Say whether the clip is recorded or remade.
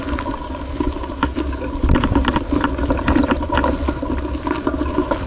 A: recorded